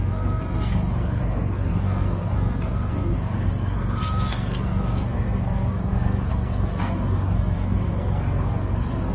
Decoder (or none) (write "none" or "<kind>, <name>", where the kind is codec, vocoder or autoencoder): codec, SNAC